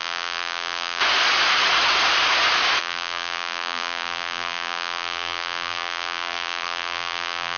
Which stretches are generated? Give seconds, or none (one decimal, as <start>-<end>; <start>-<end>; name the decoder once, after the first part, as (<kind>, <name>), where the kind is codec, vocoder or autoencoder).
0.0-1.0 (vocoder, BigVGAN v2); 2.8-7.6